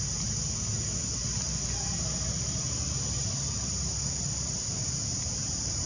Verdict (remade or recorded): recorded